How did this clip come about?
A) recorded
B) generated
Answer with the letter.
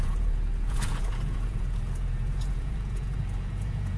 B